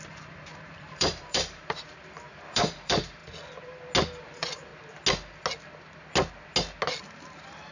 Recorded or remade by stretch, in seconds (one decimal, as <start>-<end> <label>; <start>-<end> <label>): 0.0-3.2 remade; 3.2-4.2 recorded; 4.2-4.7 remade; 4.7-7.0 recorded; 7.0-7.7 remade